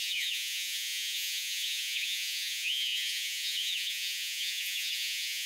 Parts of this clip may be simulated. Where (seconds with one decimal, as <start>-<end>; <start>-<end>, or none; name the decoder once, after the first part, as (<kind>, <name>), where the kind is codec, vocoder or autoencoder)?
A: 0.0-5.5 (vocoder, Vocos)